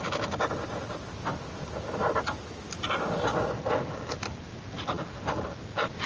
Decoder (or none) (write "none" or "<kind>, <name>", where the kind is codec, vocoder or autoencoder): none